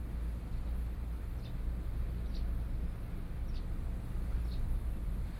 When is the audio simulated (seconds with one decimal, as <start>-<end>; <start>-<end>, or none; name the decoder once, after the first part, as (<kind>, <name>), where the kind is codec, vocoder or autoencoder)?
3.2-5.4 (vocoder, BigVGAN v2)